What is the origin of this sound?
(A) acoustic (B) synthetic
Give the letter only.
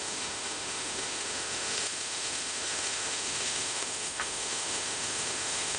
B